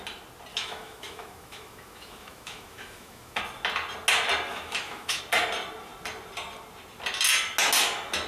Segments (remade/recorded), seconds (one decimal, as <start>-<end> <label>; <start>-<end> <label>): 0.0-0.5 recorded; 0.5-3.4 remade; 3.4-4.5 recorded; 4.5-5.2 remade; 5.2-8.3 recorded